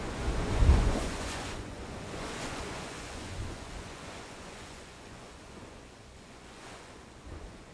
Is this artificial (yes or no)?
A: yes